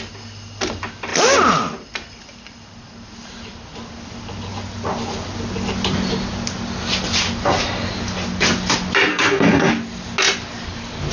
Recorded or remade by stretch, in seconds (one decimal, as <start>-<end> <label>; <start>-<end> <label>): 0.0-9.1 recorded; 9.1-9.7 remade; 9.7-11.1 recorded